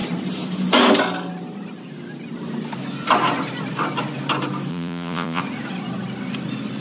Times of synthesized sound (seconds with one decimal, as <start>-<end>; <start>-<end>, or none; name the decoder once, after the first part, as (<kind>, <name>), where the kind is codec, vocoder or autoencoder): 4.7-5.4 (vocoder, Vocos)